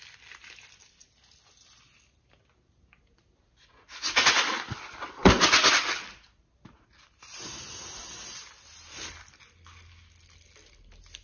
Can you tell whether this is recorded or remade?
recorded